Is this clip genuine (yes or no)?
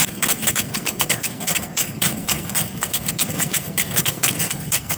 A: no